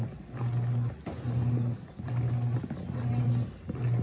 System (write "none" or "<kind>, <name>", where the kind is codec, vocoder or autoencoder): none